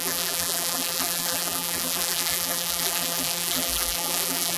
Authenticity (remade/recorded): remade